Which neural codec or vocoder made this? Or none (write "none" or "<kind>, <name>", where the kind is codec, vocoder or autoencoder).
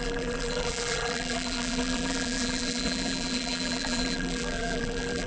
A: vocoder, BigVGAN v2